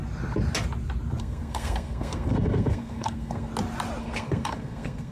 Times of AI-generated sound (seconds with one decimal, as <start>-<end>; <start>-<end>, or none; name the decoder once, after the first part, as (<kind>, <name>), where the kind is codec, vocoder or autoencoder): 1.2-3.5 (codec, SNAC); 4.0-5.1